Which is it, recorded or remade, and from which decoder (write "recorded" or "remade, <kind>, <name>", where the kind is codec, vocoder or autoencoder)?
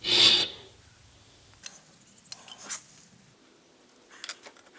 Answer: recorded